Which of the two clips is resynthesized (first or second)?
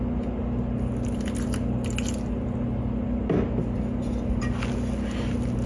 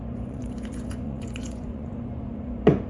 second